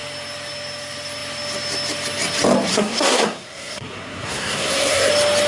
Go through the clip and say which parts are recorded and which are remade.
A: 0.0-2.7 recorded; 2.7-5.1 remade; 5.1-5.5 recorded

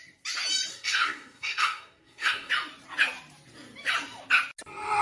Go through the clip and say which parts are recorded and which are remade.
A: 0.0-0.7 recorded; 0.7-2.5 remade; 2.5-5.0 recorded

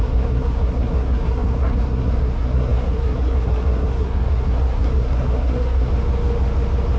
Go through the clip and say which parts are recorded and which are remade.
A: 0.0-5.9 remade; 5.9-7.0 recorded

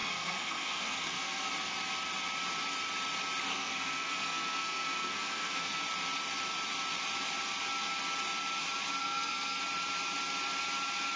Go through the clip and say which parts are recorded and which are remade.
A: 0.0-1.5 remade; 1.5-3.5 recorded; 3.5-5.8 remade; 5.8-9.0 recorded; 9.0-9.6 remade; 9.6-11.2 recorded